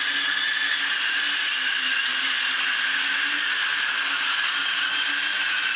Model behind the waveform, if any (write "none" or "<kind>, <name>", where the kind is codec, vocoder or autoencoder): none